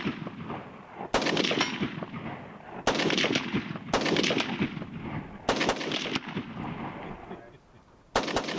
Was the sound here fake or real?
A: real